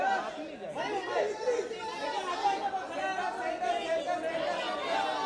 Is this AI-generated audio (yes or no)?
no